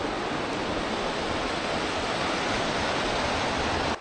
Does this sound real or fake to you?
real